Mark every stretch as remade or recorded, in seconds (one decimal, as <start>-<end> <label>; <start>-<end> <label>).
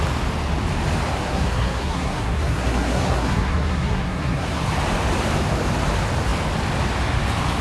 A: 0.0-1.2 recorded; 1.2-4.6 remade; 4.6-7.6 recorded